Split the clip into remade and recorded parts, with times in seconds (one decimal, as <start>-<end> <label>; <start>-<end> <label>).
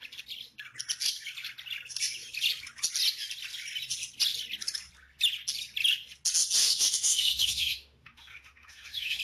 0.0-6.6 recorded; 6.6-9.2 remade